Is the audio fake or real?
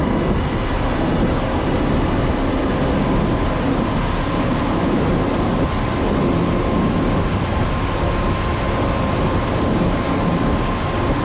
real